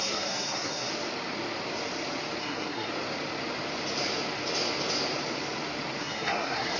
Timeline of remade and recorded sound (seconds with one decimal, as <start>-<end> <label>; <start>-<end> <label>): 0.0-0.9 remade; 0.9-2.4 recorded; 2.4-2.9 remade; 2.9-6.0 recorded; 6.0-6.8 remade